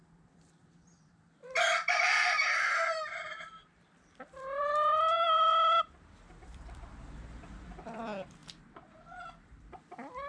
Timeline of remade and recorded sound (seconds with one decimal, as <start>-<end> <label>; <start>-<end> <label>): 0.0-5.5 remade; 5.5-6.0 recorded; 6.0-10.3 remade